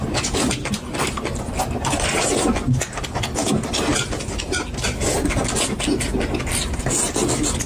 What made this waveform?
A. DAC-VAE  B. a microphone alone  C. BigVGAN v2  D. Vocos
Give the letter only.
B